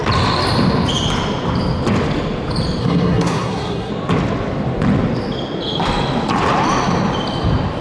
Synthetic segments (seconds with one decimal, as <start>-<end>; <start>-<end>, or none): 2.8-3.9